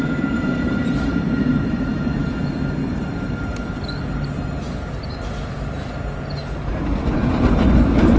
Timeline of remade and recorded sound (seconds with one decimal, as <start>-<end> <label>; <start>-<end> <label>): 0.0-1.9 remade; 1.9-6.6 recorded; 6.6-8.2 remade